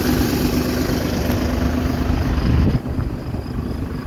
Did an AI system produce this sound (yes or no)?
yes